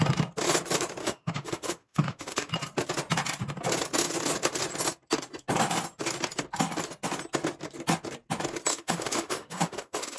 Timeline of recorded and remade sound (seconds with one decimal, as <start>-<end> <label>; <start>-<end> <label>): 0.0-1.0 recorded; 1.0-2.5 remade; 2.5-8.7 recorded; 8.7-10.2 remade

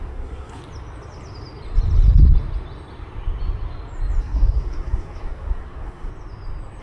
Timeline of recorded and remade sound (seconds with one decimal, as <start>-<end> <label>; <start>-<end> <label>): 0.0-0.6 remade; 0.6-4.2 recorded; 4.2-6.1 remade; 6.1-6.8 recorded

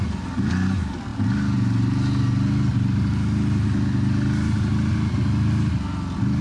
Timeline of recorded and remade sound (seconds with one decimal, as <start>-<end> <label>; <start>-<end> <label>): 0.0-6.4 recorded

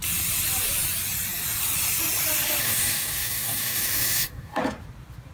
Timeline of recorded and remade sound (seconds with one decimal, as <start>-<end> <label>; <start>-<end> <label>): 0.0-2.6 recorded; 2.6-4.6 remade; 4.6-5.3 recorded

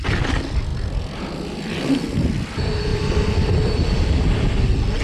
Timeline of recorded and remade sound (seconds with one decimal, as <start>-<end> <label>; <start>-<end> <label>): 0.0-2.9 recorded; 2.9-4.6 remade; 4.6-5.0 recorded

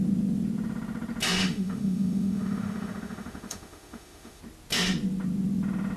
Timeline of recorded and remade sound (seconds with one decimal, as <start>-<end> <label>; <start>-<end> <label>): 0.0-1.4 recorded; 1.4-4.4 remade; 4.4-6.0 recorded